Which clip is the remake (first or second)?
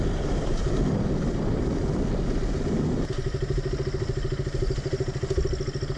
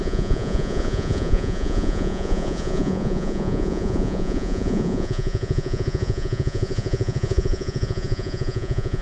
second